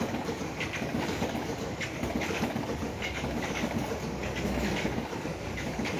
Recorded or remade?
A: remade